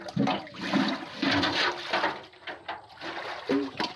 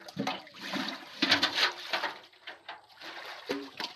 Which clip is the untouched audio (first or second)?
first